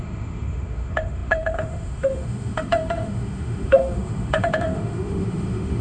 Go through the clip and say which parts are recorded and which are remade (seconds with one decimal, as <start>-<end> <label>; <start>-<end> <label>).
0.0-5.8 remade